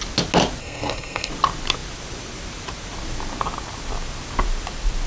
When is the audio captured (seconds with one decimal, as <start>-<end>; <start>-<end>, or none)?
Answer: 0.0-0.6; 1.3-5.1